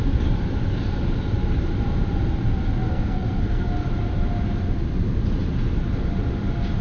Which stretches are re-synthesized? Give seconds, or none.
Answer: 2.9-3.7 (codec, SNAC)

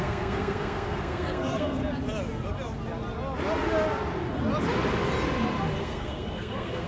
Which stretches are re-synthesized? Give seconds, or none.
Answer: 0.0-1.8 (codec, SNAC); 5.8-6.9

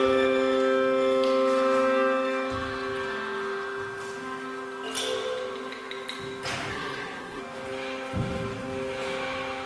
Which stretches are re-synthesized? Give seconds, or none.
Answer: 6.7-7.4 (codec, SNAC)

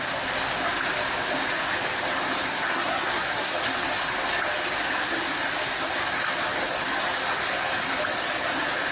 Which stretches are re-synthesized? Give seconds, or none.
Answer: 2.5-3.5 (codec, SNAC)

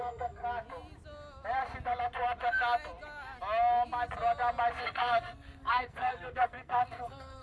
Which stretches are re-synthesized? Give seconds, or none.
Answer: 0.0-0.4 (codec, SNAC); 4.8-7.4

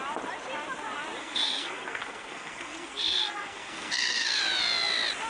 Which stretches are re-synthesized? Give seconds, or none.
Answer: 1.2-4.4 (codec, SNAC)